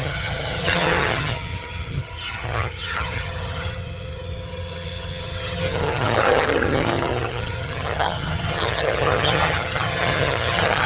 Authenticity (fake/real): fake